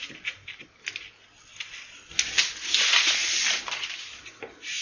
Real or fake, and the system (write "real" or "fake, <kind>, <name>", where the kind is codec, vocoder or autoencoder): real